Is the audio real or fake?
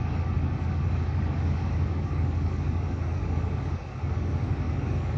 fake